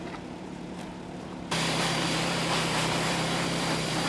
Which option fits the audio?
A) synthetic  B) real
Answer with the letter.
A